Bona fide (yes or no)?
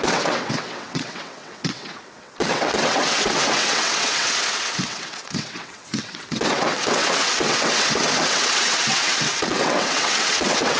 no